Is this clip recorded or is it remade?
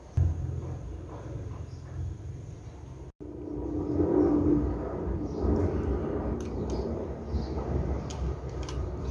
recorded